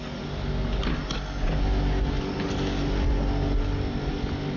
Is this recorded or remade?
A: recorded